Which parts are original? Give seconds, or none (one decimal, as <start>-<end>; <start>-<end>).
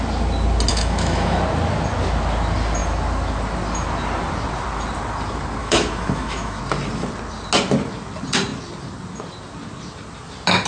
0.0-0.7; 1.4-5.6; 6.6-10.7